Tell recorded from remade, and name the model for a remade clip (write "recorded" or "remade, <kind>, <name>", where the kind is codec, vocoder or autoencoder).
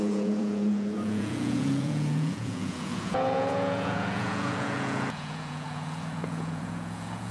remade, vocoder, Vocos